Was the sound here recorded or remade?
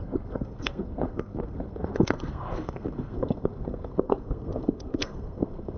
remade